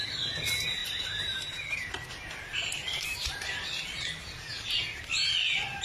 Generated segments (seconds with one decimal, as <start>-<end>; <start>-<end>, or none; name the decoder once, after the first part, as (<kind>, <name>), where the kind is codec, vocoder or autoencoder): 0.8-1.9 (vocoder, BigVGAN v2); 2.9-3.6